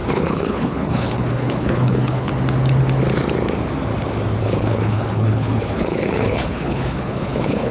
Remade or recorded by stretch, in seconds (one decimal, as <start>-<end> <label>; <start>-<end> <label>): 0.0-2.3 remade; 2.3-4.4 recorded; 4.4-7.7 remade